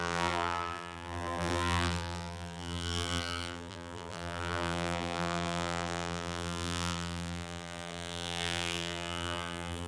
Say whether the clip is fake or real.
fake